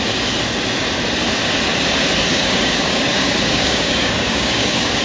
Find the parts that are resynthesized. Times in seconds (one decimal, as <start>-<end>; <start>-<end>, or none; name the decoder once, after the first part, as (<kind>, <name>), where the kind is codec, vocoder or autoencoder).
2.3-5.0 (codec, DAC)

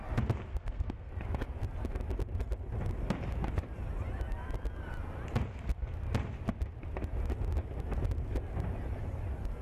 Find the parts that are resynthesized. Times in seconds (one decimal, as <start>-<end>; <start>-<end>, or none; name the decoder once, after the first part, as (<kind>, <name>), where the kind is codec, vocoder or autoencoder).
0.5-1.1 (codec, SNAC)

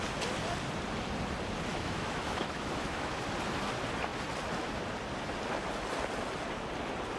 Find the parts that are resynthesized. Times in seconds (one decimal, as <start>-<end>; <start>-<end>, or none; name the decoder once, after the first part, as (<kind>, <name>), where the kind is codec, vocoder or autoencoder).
1.7-3.2 (autoencoder, DAC-VAE)

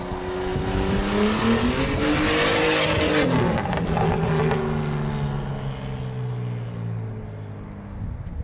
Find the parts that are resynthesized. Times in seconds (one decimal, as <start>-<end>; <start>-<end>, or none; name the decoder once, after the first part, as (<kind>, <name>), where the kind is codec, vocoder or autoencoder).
none

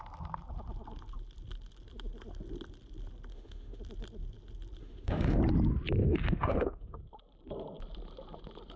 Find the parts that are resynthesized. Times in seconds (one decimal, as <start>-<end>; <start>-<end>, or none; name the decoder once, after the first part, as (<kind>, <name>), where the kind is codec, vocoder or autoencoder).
3.3-3.8 (autoencoder, DAC-VAE); 4.8-5.4; 6.0-7.0